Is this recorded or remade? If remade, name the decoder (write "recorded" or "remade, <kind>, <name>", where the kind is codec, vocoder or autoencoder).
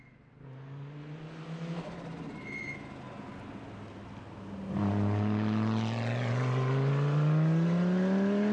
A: recorded